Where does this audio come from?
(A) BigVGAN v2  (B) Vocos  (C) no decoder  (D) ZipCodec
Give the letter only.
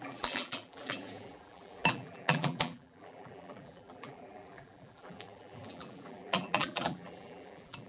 A